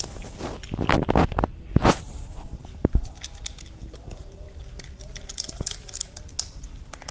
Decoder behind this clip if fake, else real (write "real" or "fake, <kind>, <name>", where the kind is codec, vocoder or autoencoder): real